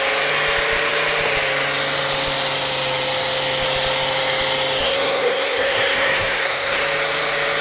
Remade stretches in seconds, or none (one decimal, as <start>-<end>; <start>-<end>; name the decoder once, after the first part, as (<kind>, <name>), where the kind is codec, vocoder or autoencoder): 4.8-6.8 (codec, SNAC)